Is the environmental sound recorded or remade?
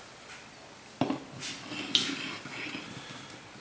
recorded